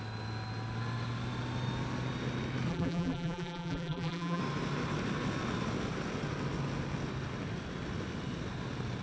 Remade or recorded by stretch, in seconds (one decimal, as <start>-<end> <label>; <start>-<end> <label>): 0.0-2.7 recorded; 2.7-4.4 remade; 4.4-9.0 recorded